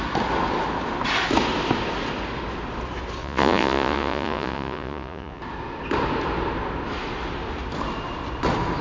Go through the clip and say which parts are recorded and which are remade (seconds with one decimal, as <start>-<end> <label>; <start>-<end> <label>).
0.0-3.2 recorded; 3.2-5.4 remade; 5.4-8.8 recorded